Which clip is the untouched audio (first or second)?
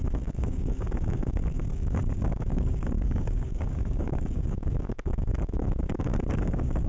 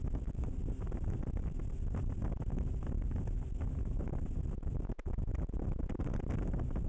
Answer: second